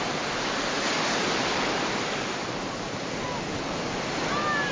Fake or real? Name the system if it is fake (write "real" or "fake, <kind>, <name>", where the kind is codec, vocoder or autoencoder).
real